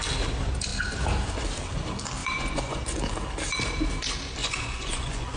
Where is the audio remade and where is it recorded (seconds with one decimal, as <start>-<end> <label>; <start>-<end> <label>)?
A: 0.0-2.2 recorded; 2.2-2.8 remade; 2.8-4.4 recorded; 4.4-5.4 remade